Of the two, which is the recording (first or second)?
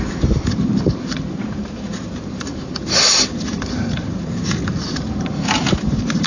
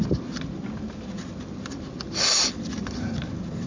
second